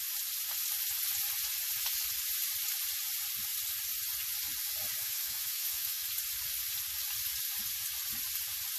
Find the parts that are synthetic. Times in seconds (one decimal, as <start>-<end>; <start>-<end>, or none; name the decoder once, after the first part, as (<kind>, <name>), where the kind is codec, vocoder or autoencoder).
5.0-6.1 (autoencoder, DAC-VAE)